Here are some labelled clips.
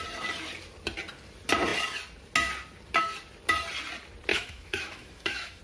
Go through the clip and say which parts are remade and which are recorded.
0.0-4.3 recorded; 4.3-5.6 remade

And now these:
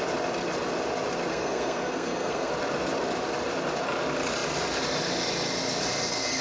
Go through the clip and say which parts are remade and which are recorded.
0.0-1.3 recorded; 1.3-2.5 remade; 2.5-6.4 recorded